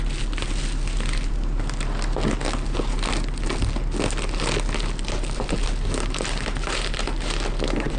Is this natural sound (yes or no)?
yes